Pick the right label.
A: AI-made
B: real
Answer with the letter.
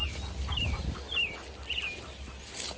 B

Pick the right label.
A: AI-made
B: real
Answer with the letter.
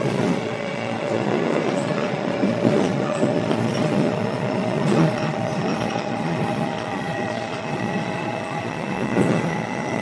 A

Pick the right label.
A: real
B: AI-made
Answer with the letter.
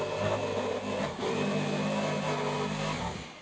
A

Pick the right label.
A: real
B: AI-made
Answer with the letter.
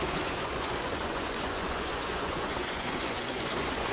B